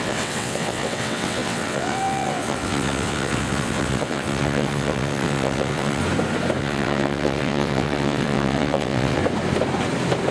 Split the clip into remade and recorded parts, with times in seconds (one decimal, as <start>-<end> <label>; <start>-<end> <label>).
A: 0.0-6.0 remade; 6.0-6.6 recorded; 6.6-9.2 remade; 9.2-10.3 recorded